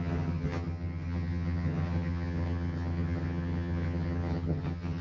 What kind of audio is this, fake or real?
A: fake